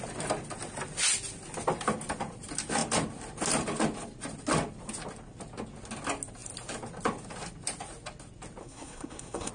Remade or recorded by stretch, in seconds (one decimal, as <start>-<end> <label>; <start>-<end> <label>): 0.0-8.6 recorded; 8.6-9.5 remade